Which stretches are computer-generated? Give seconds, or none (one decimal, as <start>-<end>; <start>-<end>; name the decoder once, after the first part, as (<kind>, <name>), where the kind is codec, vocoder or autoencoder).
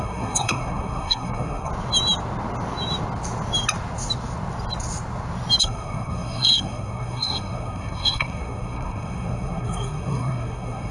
0.0-1.7 (codec, SNAC); 5.6-10.9